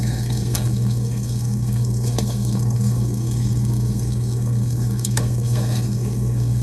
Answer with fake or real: fake